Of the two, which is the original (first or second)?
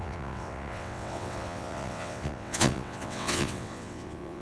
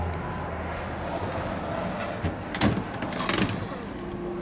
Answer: second